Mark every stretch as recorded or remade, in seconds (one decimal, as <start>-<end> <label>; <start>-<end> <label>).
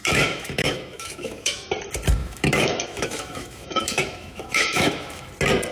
0.0-1.7 remade; 1.7-2.2 recorded; 2.2-5.3 remade; 5.3-5.7 recorded